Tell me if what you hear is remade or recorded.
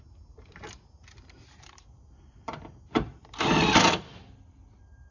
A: recorded